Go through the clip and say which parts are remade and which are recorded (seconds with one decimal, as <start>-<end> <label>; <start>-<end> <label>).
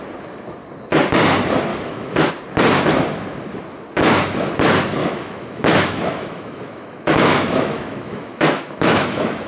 0.0-1.7 recorded; 1.7-2.3 remade; 2.3-5.0 recorded; 5.0-9.5 remade